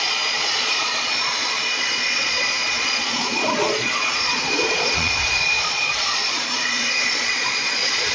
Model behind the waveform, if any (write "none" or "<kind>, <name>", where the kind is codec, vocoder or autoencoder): vocoder, Vocos